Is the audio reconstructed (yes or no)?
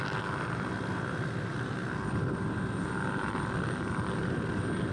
no